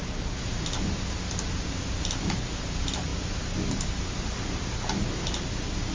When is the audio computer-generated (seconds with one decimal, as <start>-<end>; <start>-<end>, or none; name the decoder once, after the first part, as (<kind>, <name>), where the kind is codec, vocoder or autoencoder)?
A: none